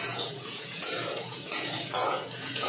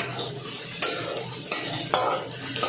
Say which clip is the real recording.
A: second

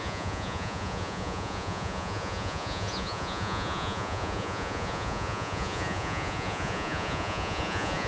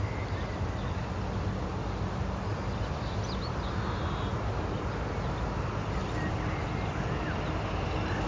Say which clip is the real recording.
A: second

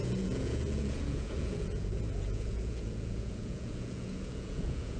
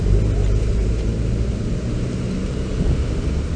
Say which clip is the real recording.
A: second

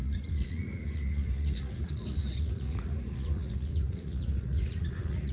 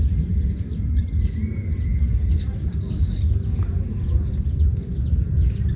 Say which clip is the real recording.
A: second